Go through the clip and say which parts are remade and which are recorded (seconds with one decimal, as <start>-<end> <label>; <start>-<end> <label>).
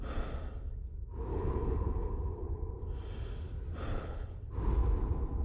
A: 0.0-1.3 recorded; 1.3-2.7 remade; 2.7-3.9 recorded; 3.9-4.5 remade; 4.5-5.4 recorded